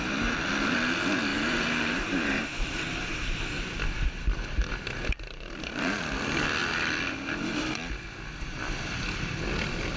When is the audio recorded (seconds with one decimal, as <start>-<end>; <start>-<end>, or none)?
0.0-1.3; 6.0-10.0